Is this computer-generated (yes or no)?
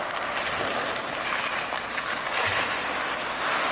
no